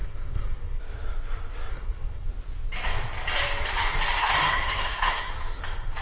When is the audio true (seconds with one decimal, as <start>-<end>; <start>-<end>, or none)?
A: 0.8-1.7; 2.3-4.2; 5.3-6.0

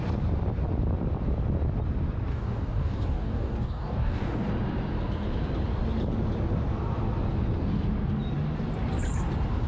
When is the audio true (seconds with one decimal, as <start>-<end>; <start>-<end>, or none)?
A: 0.0-2.3; 4.5-9.7

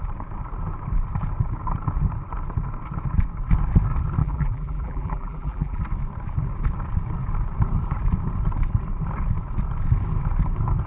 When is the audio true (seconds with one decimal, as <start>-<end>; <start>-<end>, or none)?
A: 0.0-4.2; 5.8-10.9